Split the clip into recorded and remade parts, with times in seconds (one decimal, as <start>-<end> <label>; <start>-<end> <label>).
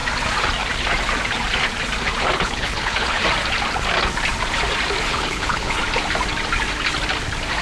0.0-2.2 recorded; 2.2-3.2 remade; 3.2-5.1 recorded; 5.1-5.8 remade; 5.8-7.6 recorded